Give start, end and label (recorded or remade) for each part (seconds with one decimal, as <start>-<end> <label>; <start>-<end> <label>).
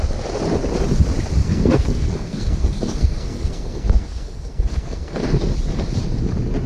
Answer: 0.0-1.4 recorded; 1.4-5.4 remade; 5.4-6.7 recorded